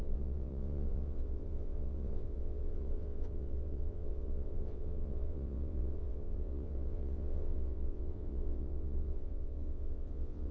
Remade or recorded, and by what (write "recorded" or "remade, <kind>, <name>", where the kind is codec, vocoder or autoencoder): remade, vocoder, WaveNeXt